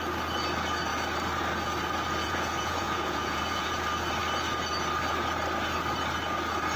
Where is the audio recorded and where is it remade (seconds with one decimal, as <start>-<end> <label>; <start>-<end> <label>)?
0.0-2.2 recorded; 2.2-3.7 remade; 3.7-6.8 recorded